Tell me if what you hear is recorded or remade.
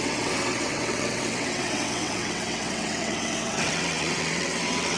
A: remade